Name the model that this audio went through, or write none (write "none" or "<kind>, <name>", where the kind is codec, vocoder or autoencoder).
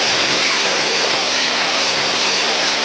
codec, SNAC